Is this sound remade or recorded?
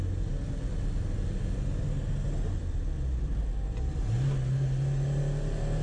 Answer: recorded